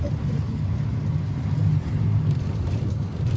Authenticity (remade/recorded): recorded